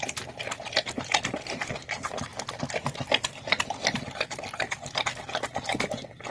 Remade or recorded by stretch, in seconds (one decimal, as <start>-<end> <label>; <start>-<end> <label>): 0.0-6.3 recorded